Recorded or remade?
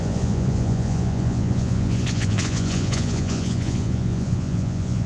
remade